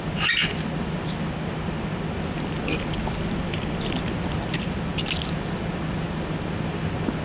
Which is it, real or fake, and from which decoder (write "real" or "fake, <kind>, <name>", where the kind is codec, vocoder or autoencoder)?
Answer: real